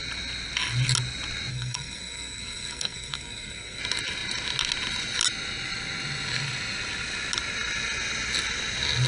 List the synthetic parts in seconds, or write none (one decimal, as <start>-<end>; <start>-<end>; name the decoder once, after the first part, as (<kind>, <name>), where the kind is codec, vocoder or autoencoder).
1.5-3.8 (codec, SNAC)